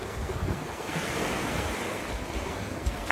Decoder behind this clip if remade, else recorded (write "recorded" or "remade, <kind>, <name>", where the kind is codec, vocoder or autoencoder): remade, codec, SNAC